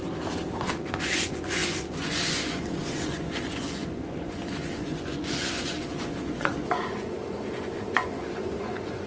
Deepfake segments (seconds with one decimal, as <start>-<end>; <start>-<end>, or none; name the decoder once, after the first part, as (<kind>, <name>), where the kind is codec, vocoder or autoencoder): 0.6-9.1 (vocoder, Vocos)